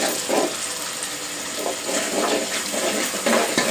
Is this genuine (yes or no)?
no